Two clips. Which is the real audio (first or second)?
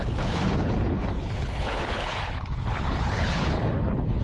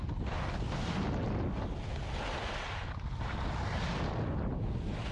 second